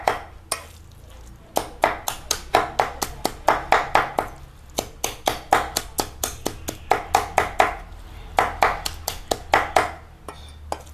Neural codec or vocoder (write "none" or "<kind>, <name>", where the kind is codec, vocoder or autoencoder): none